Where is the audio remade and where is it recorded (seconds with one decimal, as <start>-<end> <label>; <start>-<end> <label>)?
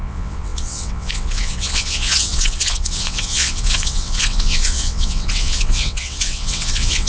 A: 0.0-7.1 remade